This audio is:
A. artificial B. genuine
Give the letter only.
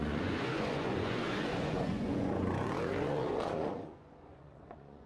A